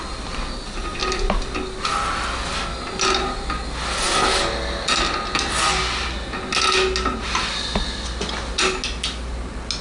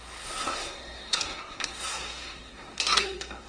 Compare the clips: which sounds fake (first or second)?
second